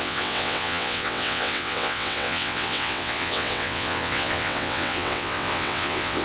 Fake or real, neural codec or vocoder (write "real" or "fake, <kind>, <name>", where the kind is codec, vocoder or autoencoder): fake, vocoder, WaveNeXt